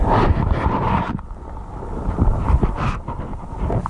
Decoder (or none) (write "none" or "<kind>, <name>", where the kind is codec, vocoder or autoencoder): none